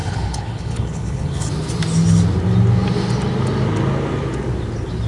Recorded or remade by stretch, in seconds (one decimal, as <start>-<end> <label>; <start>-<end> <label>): 0.0-1.5 remade; 1.5-5.1 recorded